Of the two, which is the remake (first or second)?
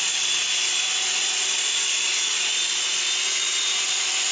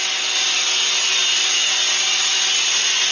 first